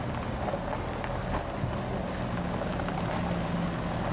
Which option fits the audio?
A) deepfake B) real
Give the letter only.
B